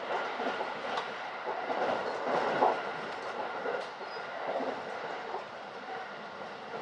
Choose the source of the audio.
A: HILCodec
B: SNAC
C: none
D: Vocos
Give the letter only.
C